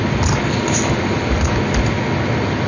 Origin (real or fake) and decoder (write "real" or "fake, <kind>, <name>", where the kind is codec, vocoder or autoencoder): real